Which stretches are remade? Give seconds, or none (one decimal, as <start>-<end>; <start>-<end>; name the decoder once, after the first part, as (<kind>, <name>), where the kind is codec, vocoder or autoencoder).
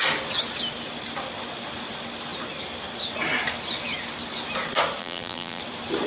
5.0-5.6 (vocoder, BigVGAN v2)